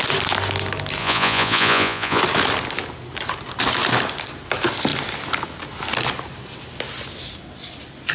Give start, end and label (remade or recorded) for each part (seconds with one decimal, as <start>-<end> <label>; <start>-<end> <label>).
0.0-1.0 recorded; 1.0-2.2 remade; 2.2-8.1 recorded